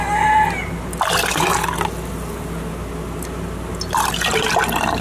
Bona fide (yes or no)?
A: yes